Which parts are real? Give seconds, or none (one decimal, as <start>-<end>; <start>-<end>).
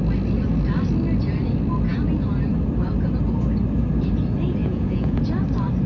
0.0-4.6; 5.2-5.9